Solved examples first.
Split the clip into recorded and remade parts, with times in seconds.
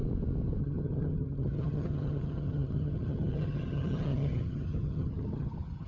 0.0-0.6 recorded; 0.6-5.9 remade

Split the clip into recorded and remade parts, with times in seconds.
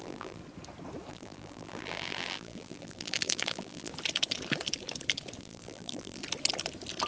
0.0-0.4 remade; 0.4-1.1 recorded; 1.1-3.9 remade; 3.9-5.4 recorded; 5.4-6.2 remade; 6.2-7.1 recorded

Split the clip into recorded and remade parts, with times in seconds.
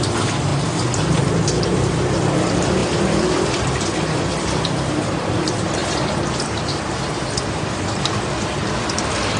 0.0-0.5 remade; 0.5-1.2 recorded; 1.2-9.4 remade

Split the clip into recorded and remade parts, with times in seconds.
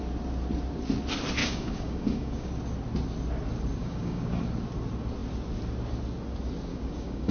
0.0-1.4 recorded; 1.4-2.5 remade; 2.5-3.8 recorded; 3.8-4.4 remade; 4.4-6.7 recorded; 6.7-7.3 remade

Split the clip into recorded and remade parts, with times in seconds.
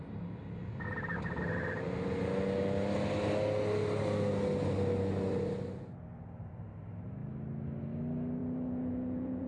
0.0-8.4 recorded; 8.4-9.5 remade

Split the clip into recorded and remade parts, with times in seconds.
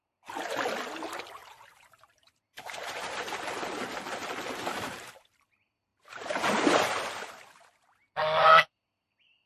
0.0-1.4 recorded; 1.4-5.4 remade; 5.4-5.9 recorded; 5.9-7.3 remade; 7.3-9.5 recorded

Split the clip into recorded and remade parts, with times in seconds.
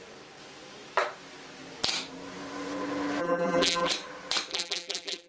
0.0-3.2 recorded; 3.2-3.9 remade; 3.9-4.5 recorded; 4.5-5.3 remade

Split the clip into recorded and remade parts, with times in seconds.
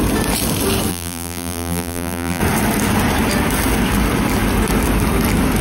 0.0-0.9 recorded; 0.9-2.4 remade; 2.4-5.6 recorded